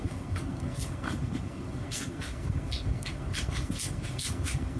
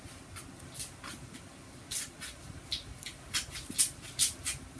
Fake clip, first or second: first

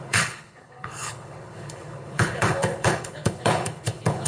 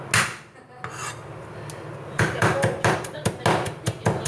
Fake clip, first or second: first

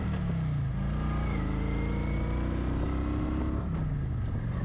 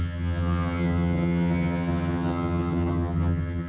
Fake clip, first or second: second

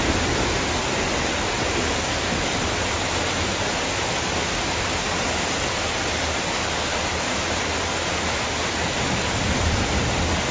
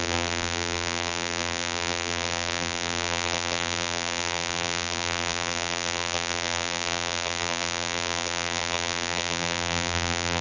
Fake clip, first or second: second